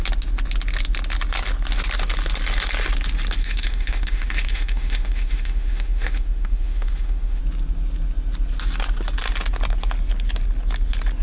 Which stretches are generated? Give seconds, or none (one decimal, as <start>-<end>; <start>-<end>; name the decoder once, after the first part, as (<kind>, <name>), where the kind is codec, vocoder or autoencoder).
3.4-7.4 (autoencoder, DAC-VAE)